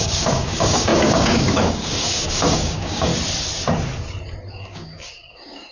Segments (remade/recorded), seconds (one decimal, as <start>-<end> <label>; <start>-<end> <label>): 0.0-3.1 remade; 3.1-4.5 recorded; 4.5-5.7 remade